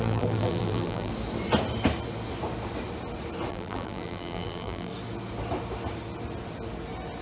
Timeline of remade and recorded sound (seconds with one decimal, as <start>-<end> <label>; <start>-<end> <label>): 0.0-1.1 remade; 1.1-3.5 recorded; 3.5-4.9 remade; 4.9-7.2 recorded

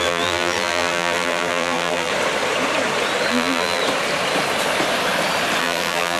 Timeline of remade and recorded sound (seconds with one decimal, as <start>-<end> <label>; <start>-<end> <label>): 0.0-2.1 remade; 2.1-3.3 recorded; 3.3-3.8 remade; 3.8-5.6 recorded; 5.6-6.2 remade

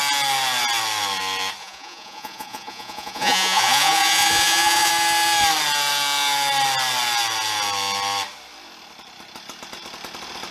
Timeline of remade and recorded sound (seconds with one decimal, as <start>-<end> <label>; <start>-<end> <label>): 0.0-1.6 recorded; 1.6-4.9 remade; 4.9-10.5 recorded

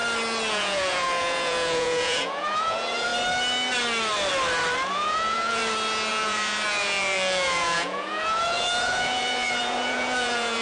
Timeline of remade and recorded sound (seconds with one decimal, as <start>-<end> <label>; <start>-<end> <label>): 0.0-0.5 recorded; 0.5-3.1 remade; 3.1-4.9 recorded; 4.9-5.6 remade; 5.6-6.1 recorded; 6.1-10.6 remade

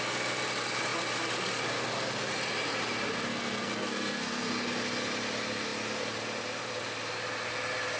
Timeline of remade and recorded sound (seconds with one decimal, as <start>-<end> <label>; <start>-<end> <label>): 0.0-3.3 recorded; 3.3-4.5 remade; 4.5-8.0 recorded

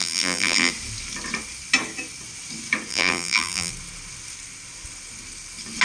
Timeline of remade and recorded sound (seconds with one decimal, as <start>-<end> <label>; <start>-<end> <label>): 0.0-0.7 remade; 0.7-2.9 recorded; 2.9-3.7 remade; 3.7-5.8 recorded

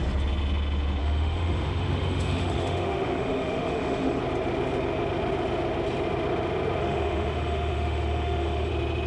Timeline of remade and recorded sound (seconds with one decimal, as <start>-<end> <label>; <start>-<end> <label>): 0.0-1.0 recorded; 1.0-4.2 remade; 4.2-6.8 recorded; 6.8-8.7 remade; 8.7-9.1 recorded

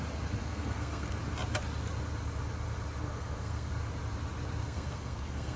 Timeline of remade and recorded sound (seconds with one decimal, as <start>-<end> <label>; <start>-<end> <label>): 0.0-0.4 recorded; 0.4-1.2 remade; 1.2-3.0 recorded; 3.0-3.7 remade; 3.7-4.6 recorded; 4.6-5.6 remade